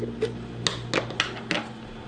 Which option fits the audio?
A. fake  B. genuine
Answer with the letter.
B